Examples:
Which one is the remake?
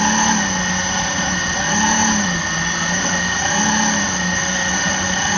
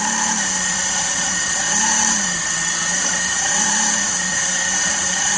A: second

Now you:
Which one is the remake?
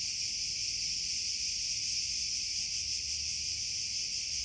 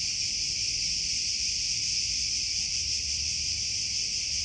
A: second